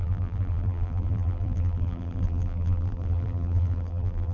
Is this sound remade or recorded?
remade